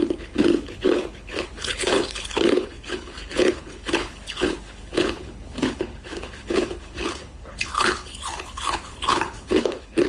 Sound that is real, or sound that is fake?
fake